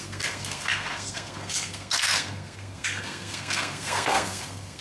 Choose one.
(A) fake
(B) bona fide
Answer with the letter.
A